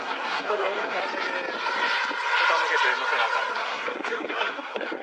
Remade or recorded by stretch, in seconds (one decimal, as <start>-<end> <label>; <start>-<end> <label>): 0.0-1.0 remade; 1.0-3.5 recorded; 3.5-5.0 remade